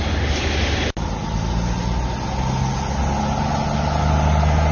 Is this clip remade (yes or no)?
no